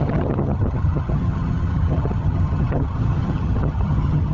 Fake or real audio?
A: fake